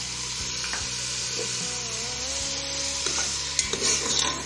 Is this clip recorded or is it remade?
recorded